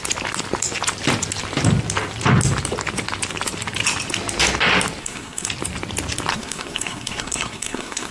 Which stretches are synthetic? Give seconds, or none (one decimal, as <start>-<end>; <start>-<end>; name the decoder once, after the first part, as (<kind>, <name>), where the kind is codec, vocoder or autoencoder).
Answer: 5.0-5.5 (codec, SNAC); 6.3-8.1